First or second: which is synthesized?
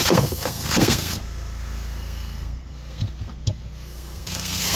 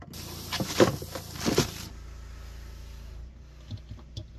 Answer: first